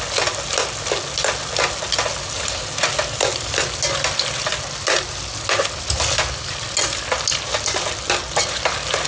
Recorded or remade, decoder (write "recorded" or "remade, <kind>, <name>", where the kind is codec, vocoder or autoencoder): recorded